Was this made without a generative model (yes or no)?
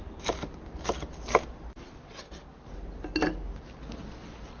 yes